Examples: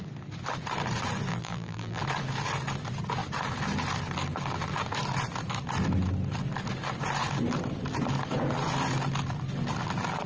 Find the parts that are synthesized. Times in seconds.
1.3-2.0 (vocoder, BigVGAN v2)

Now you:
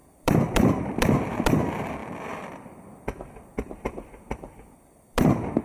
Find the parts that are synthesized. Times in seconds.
0.0-5.6 (vocoder, BigVGAN v2)

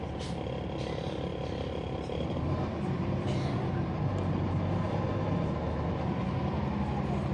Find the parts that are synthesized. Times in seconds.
1.3-3.8 (vocoder, BigVGAN v2)

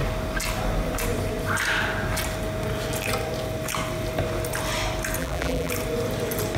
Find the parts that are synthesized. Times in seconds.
5.2-5.7 (vocoder, BigVGAN v2)